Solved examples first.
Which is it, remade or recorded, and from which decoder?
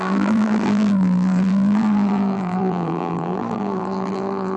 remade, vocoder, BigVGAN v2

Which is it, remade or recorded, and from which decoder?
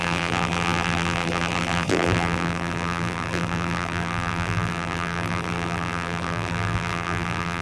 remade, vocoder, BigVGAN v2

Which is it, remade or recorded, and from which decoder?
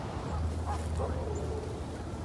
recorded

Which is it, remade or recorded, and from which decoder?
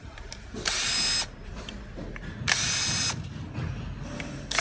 recorded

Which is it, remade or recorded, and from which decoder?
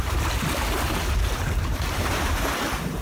remade, vocoder, BigVGAN v2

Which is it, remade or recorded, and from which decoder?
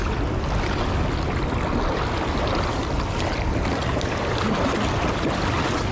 recorded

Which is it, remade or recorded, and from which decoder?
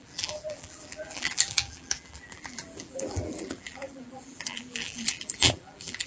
remade, vocoder, BigVGAN v2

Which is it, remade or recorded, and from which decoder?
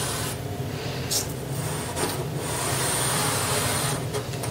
recorded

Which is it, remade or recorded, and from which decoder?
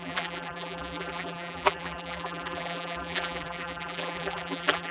remade, vocoder, BigVGAN v2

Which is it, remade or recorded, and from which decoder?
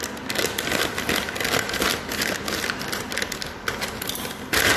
recorded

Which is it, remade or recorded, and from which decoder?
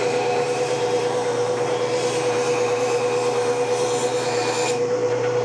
remade, vocoder, BigVGAN v2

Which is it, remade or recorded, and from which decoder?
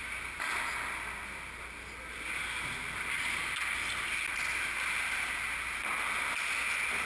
recorded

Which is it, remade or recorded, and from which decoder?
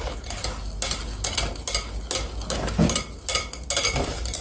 recorded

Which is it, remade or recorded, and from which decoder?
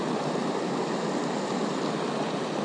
remade, vocoder, BigVGAN v2